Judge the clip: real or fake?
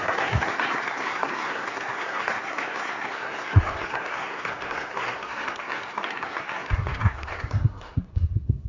fake